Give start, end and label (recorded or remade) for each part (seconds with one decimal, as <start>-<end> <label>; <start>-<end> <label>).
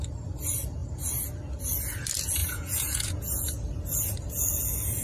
0.0-2.4 recorded; 2.4-3.4 remade; 3.4-5.0 recorded